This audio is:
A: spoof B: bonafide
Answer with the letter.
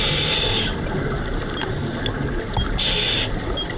B